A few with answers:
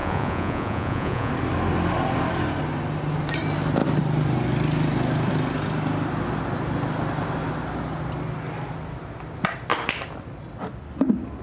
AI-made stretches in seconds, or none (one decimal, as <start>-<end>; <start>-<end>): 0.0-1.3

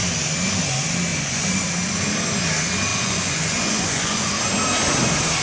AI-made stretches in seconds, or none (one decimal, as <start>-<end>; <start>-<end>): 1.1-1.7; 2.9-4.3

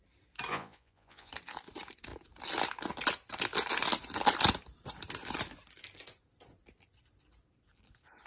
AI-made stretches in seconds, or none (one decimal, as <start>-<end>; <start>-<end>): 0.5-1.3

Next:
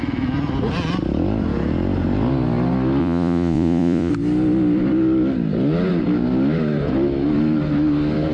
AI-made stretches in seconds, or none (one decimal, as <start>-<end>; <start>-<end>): 3.0-4.1

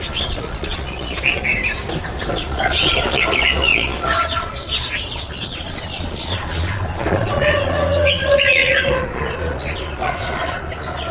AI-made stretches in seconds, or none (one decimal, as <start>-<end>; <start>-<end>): 0.0-1.5; 2.3-11.1